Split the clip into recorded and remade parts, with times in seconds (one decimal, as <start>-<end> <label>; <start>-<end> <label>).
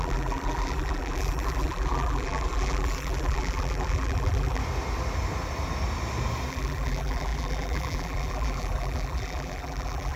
0.0-4.6 remade; 4.6-6.5 recorded; 6.5-10.2 remade